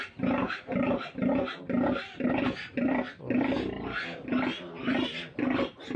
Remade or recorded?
recorded